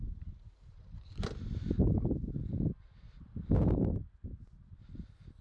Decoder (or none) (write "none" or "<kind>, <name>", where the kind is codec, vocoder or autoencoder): none